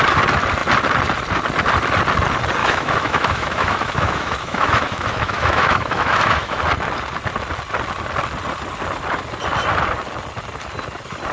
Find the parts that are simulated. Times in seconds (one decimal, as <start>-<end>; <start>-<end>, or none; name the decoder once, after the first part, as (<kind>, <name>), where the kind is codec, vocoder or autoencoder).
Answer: 2.6-6.6 (autoencoder, DAC-VAE)